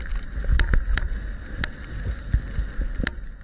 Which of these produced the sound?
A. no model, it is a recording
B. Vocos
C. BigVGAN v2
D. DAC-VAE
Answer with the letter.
A